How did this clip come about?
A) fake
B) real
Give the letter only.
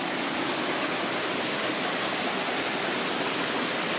B